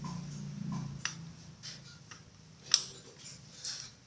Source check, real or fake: real